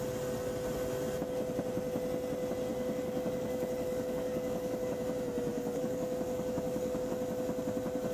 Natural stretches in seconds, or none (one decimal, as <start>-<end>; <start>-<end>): 0.0-2.7; 5.0-5.5; 7.1-8.1